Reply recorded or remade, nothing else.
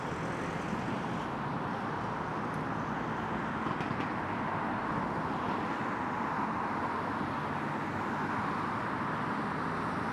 recorded